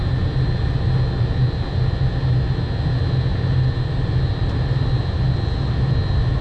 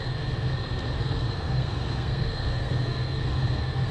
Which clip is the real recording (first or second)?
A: first